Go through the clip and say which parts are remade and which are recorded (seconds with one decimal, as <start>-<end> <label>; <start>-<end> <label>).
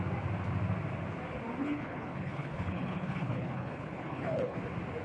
0.0-1.6 recorded; 1.6-4.6 remade; 4.6-5.0 recorded